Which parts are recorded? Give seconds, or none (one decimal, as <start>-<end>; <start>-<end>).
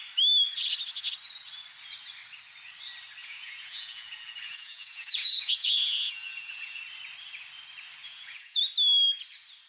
0.0-3.2; 6.8-8.0; 8.6-9.7